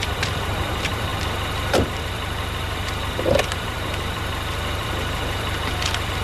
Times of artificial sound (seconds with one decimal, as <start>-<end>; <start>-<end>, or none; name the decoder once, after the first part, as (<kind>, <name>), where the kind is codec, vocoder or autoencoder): 0.0-1.1 (vocoder, BigVGAN v2); 2.0-6.2